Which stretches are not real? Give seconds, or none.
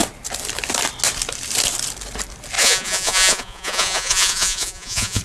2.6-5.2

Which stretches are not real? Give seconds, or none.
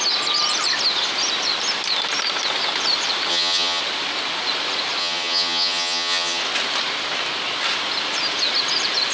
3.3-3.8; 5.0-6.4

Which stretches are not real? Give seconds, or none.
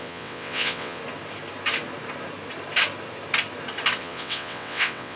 0.0-1.0; 4.0-5.2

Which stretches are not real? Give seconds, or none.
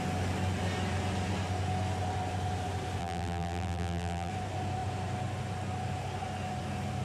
3.0-4.3